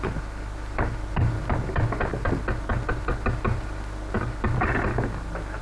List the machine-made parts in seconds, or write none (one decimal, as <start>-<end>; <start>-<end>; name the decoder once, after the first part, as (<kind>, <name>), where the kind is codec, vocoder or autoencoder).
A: none